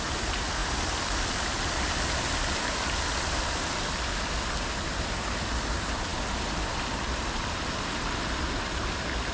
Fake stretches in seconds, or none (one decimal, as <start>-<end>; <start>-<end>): 0.6-2.2